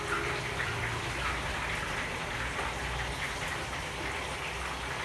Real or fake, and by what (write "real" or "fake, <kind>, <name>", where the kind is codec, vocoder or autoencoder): real